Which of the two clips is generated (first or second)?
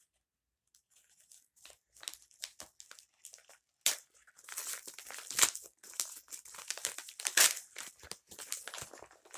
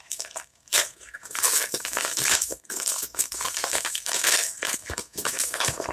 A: second